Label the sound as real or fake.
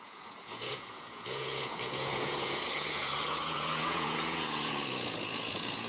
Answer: fake